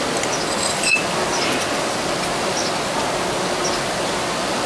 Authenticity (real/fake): real